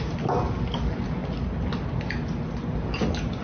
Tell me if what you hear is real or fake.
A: real